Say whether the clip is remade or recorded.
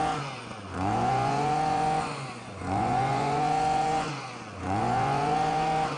remade